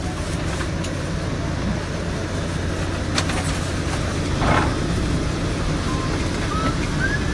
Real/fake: real